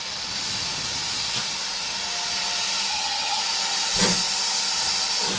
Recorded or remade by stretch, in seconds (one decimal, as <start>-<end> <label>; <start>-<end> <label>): 0.0-2.9 recorded; 2.9-3.4 remade; 3.4-5.4 recorded